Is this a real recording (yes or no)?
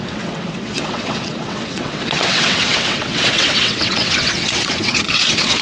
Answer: no